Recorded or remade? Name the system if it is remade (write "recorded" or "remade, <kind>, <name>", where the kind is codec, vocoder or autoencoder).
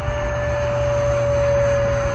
recorded